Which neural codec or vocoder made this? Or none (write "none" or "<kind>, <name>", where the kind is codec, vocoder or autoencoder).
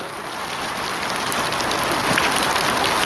none